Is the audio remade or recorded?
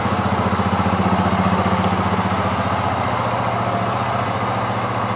recorded